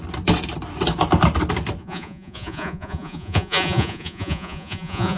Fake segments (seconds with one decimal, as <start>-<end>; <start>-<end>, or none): 1.8-5.2